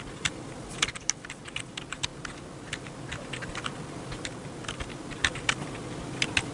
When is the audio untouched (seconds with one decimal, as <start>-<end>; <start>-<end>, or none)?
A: 0.0-6.5